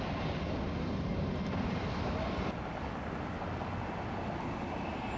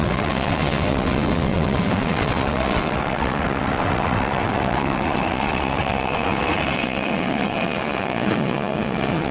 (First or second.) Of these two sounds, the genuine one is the first